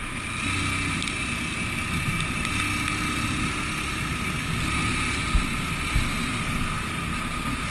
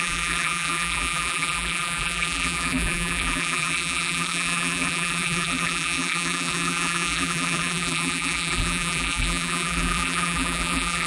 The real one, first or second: first